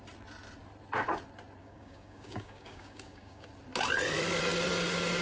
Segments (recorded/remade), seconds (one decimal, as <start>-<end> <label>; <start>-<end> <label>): 0.0-1.6 recorded; 1.6-3.5 remade; 3.5-5.2 recorded